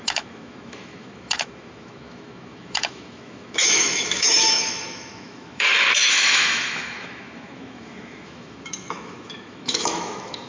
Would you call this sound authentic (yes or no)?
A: no